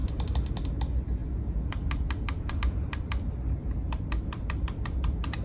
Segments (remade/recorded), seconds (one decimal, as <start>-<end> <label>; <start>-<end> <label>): 0.0-0.5 remade; 0.5-5.4 recorded